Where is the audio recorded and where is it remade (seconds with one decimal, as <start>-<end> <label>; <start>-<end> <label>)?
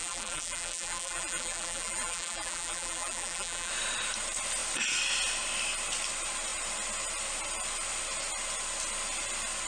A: 0.0-3.7 remade; 3.7-9.7 recorded